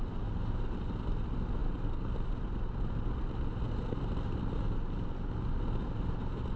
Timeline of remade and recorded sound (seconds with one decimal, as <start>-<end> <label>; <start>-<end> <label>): 0.0-6.6 recorded